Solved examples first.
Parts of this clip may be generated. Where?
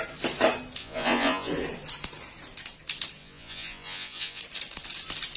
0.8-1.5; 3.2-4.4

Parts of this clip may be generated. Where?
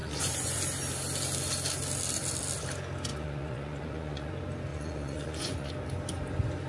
0.0-0.6; 3.1-4.3; 4.7-5.7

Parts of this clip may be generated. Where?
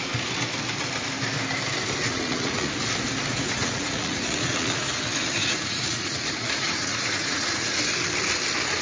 2.0-2.7; 3.3-5.0; 5.4-7.8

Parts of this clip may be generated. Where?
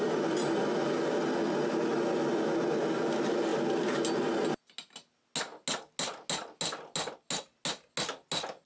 none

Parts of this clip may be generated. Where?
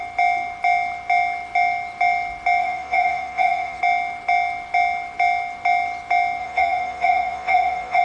2.6-3.8; 6.4-8.0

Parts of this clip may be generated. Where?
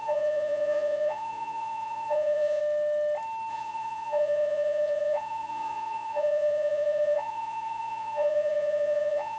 0.0-2.6; 3.5-9.4